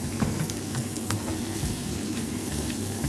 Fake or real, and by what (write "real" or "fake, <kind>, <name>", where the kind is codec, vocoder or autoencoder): fake, codec, SNAC